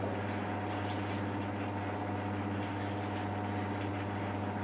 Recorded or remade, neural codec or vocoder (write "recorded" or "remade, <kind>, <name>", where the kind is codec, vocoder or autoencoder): recorded